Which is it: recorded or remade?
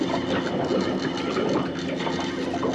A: recorded